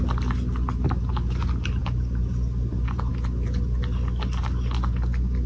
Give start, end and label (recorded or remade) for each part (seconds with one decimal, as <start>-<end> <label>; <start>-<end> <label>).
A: 0.0-5.5 recorded